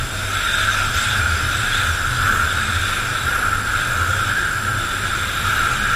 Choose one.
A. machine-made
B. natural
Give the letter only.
B